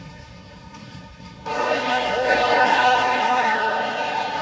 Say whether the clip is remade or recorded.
remade